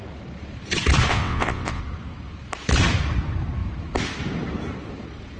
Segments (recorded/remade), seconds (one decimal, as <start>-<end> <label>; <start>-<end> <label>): 0.0-1.1 recorded; 1.1-1.8 remade; 1.8-5.4 recorded